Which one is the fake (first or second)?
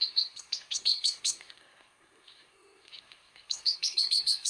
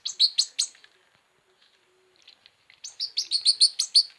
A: first